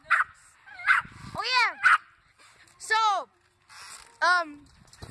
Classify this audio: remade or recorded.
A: recorded